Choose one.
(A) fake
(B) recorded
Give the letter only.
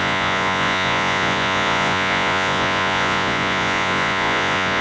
A